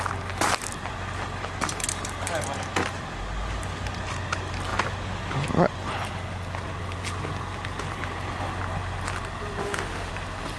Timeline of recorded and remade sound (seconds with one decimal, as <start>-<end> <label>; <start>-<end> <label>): 0.0-9.6 recorded; 9.6-10.1 remade; 10.1-10.6 recorded